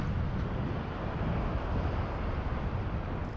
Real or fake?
real